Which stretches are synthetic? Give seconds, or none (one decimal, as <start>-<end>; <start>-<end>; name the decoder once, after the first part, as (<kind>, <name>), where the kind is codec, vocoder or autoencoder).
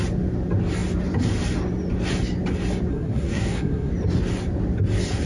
2.9-3.9 (codec, SNAC)